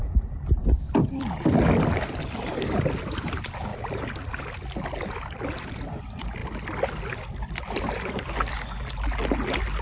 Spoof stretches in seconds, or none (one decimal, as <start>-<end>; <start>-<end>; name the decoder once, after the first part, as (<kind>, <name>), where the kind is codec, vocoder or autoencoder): 0.0-3.7 (vocoder, BigVGAN v2); 4.4-6.4